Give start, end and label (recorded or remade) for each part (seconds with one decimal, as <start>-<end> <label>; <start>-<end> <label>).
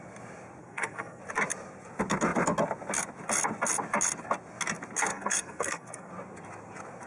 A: 0.0-0.6 recorded; 0.6-1.2 remade; 1.2-5.1 recorded; 5.1-6.1 remade; 6.1-7.1 recorded